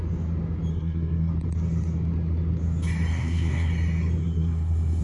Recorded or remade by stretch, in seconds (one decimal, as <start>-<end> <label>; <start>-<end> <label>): 0.0-0.7 recorded; 0.7-1.3 remade; 1.3-3.1 recorded; 3.1-3.7 remade; 3.7-4.2 recorded; 4.2-5.0 remade